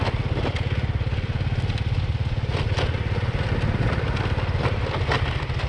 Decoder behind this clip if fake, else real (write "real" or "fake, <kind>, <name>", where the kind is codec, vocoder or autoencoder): real